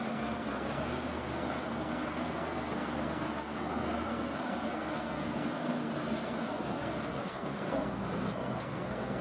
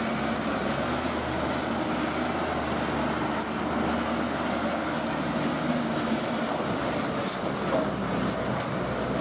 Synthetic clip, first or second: first